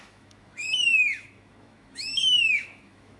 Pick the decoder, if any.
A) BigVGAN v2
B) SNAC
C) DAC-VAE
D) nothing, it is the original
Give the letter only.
C